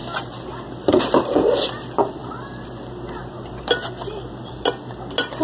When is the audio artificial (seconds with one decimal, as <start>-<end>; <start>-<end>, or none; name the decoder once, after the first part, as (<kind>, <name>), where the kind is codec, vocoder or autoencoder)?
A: 0.0-1.0 (vocoder, BigVGAN v2); 2.2-2.8; 3.2-4.5